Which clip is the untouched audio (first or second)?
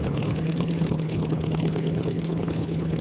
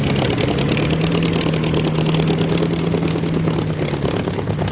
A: second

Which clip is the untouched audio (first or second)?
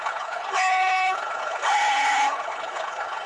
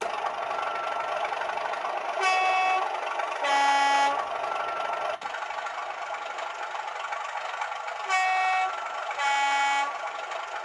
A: second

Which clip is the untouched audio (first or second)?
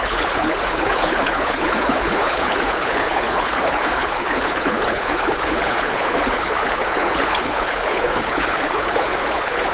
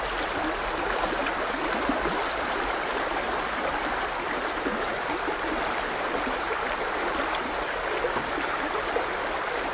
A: second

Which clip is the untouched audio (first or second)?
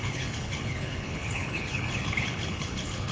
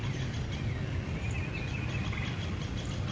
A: second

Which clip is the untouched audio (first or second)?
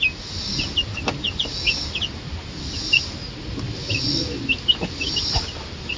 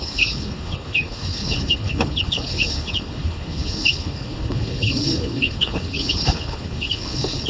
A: first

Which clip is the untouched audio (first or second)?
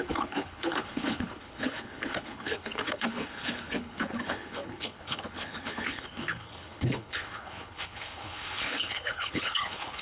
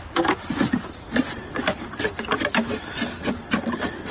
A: second